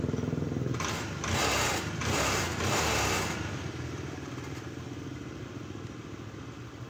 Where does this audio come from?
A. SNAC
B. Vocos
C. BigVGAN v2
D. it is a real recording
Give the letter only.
D